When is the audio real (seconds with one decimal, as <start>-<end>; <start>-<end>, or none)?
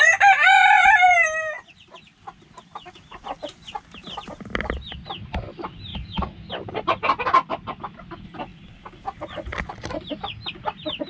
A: 0.0-5.9; 6.5-11.1